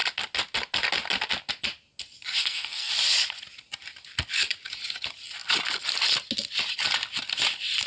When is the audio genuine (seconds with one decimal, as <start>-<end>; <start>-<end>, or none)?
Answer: 0.0-2.4; 2.9-7.9